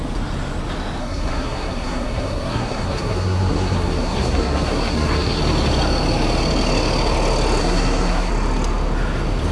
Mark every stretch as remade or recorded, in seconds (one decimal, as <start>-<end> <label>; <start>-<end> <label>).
0.0-1.0 recorded; 1.0-5.4 remade; 5.4-7.6 recorded; 7.6-8.3 remade; 8.3-9.5 recorded

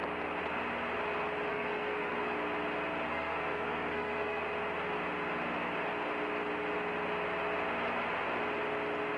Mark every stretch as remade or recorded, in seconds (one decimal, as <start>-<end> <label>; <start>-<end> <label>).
0.0-1.5 recorded; 1.5-2.1 remade; 2.1-3.1 recorded; 3.1-4.4 remade; 4.4-9.2 recorded

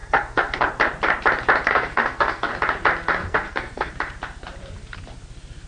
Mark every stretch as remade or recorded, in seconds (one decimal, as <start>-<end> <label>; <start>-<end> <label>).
0.0-0.7 remade; 0.7-1.7 recorded; 1.7-2.5 remade; 2.5-3.2 recorded; 3.2-3.9 remade; 3.9-5.7 recorded